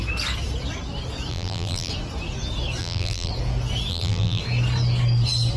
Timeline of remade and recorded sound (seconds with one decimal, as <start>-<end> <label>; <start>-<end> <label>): 0.0-1.3 recorded; 1.3-1.9 remade; 1.9-2.8 recorded; 2.8-3.3 remade; 3.3-3.9 recorded; 3.9-4.4 remade; 4.4-5.6 recorded